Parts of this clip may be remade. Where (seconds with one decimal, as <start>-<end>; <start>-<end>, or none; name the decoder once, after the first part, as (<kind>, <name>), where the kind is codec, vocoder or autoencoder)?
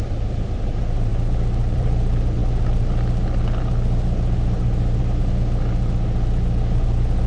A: 0.0-1.1 (vocoder, BigVGAN v2); 1.7-2.4; 6.8-7.3